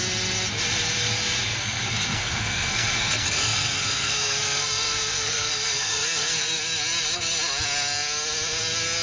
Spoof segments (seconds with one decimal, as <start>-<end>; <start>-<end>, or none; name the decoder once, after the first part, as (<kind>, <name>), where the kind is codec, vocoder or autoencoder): 1.5-6.6 (codec, SNAC)